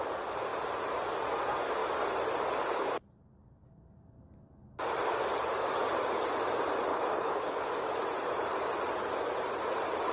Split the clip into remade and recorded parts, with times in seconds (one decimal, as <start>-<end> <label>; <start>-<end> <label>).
0.0-6.9 recorded; 6.9-7.7 remade; 7.7-10.1 recorded